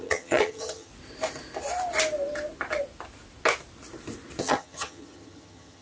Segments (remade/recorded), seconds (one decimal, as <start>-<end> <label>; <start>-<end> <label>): 0.0-0.9 remade; 0.9-4.4 recorded; 4.4-5.8 remade